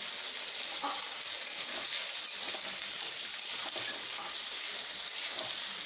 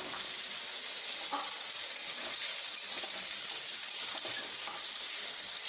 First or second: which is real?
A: first